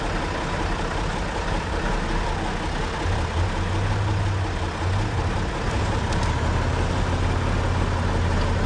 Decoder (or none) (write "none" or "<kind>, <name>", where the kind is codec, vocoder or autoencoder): none